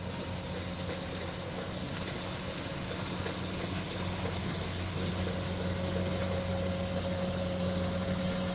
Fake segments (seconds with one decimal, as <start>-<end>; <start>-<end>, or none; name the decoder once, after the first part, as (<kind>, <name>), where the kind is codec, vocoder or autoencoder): 1.4-2.0 (codec, DAC); 4.4-5.1